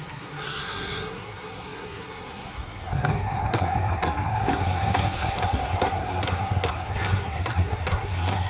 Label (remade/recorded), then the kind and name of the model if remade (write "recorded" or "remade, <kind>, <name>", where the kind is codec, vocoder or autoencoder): remade, codec, SNAC